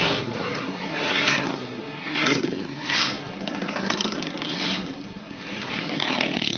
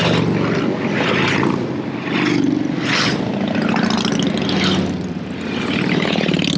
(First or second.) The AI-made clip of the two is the first